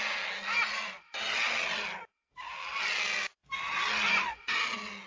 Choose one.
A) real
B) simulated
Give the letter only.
A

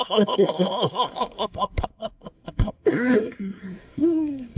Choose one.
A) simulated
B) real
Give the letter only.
A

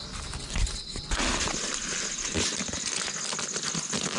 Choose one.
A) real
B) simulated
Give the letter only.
A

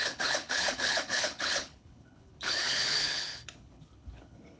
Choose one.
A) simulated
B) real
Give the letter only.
A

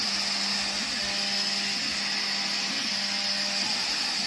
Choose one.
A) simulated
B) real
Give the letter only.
B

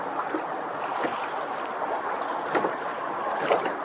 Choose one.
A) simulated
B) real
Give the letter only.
B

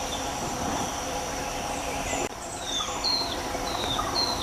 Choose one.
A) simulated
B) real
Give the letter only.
A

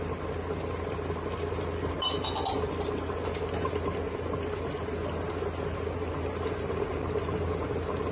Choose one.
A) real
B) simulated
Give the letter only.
A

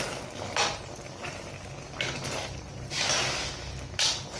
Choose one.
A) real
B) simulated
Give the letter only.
A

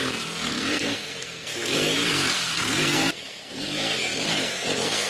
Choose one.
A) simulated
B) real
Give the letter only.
A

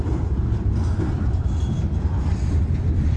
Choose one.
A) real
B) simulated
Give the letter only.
A